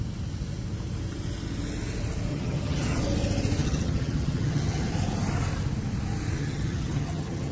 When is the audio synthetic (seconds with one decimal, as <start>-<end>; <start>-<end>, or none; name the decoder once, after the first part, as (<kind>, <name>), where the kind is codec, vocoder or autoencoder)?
2.3-3.0 (vocoder, HiFi-GAN); 3.6-4.9; 6.4-7.5